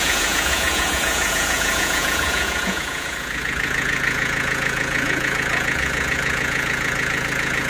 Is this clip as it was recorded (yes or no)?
no